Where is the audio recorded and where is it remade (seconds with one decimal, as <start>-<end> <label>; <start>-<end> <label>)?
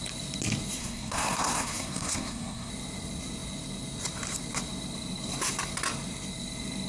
0.0-0.8 recorded; 0.8-2.7 remade; 2.7-6.9 recorded